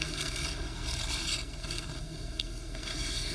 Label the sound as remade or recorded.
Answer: remade